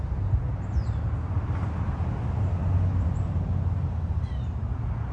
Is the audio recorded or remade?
recorded